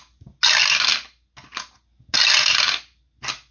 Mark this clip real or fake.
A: real